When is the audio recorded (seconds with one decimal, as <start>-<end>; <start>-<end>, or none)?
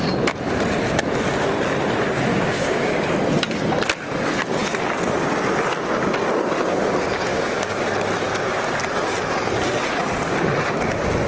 0.0-2.3; 3.1-7.3; 7.8-11.3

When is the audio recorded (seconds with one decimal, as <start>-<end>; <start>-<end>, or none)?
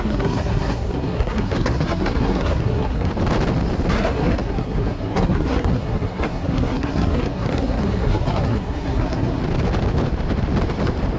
3.1-3.9; 9.4-11.2